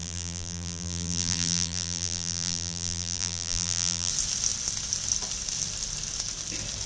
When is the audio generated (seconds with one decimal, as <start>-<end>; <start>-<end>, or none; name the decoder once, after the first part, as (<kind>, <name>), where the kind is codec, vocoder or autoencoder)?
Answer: 0.0-4.1 (vocoder, BigVGAN v2)